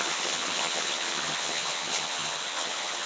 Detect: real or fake fake